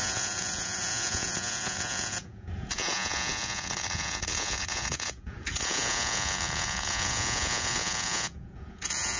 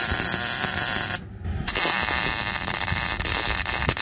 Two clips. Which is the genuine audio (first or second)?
second